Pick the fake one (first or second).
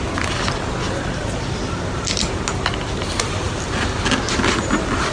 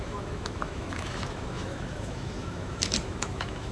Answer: second